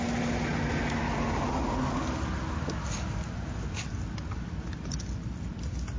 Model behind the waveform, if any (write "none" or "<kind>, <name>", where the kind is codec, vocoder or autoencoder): none